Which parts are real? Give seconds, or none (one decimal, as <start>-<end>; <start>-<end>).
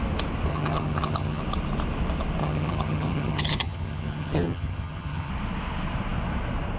0.0-0.5; 1.4-2.4; 5.3-6.8